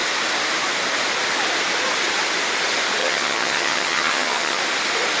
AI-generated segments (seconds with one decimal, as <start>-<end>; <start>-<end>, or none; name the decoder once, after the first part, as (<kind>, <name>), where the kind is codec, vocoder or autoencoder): 3.0-4.6 (vocoder, HiFi-GAN)